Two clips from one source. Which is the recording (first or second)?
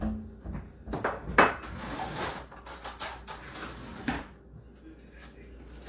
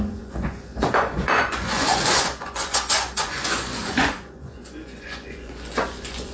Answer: first